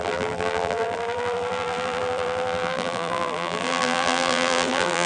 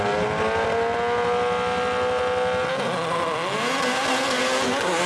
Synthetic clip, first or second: first